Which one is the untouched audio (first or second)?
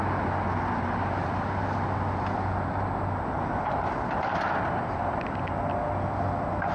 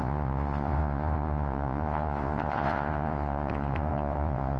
first